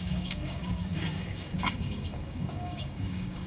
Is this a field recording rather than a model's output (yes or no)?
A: no